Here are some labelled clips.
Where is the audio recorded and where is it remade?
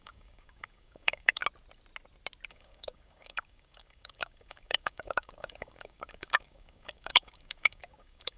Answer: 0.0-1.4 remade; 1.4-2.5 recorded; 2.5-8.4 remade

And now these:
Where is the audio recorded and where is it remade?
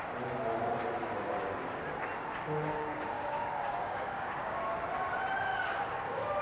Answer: 0.0-2.7 recorded; 2.7-4.6 remade; 4.6-5.5 recorded; 5.5-6.4 remade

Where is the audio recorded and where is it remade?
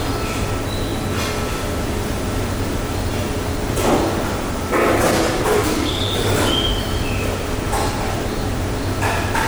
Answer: 0.0-4.8 recorded; 4.8-6.5 remade; 6.5-9.5 recorded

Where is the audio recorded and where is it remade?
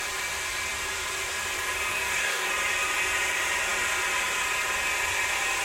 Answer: 0.0-1.9 recorded; 1.9-2.5 remade; 2.5-5.6 recorded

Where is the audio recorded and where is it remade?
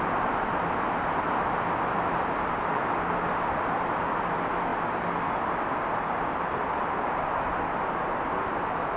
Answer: 0.0-9.0 recorded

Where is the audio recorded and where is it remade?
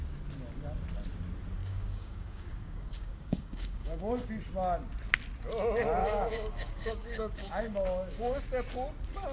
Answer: 0.0-1.6 recorded; 1.6-4.3 remade; 4.3-6.0 recorded; 6.0-8.4 remade; 8.4-9.3 recorded